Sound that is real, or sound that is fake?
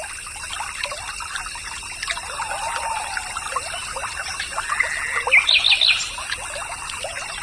real